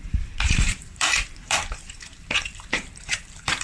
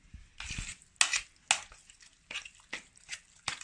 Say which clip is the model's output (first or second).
first